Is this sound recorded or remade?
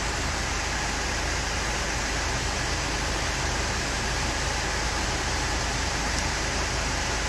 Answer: recorded